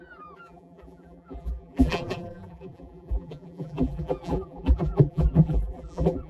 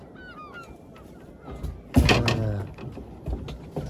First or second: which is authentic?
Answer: second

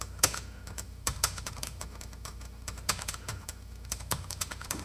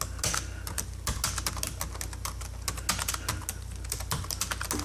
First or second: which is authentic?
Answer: second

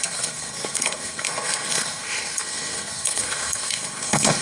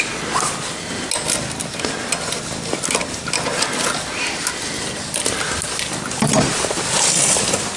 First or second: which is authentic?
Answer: second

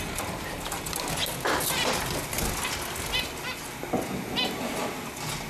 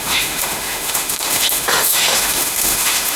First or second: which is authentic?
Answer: first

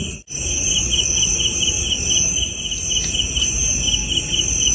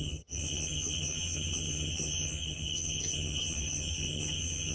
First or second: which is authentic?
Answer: first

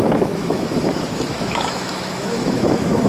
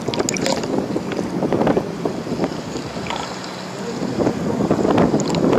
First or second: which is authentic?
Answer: second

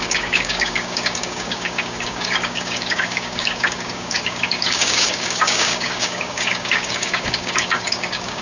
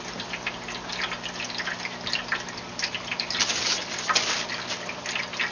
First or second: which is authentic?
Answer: second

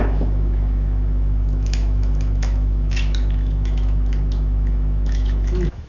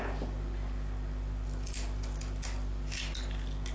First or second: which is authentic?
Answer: second